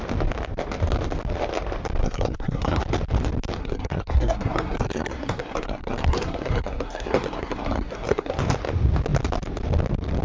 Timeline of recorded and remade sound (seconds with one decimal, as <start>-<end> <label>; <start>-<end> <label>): 0.0-2.0 recorded; 2.0-2.8 remade; 2.8-3.6 recorded; 3.6-8.3 remade; 8.3-10.2 recorded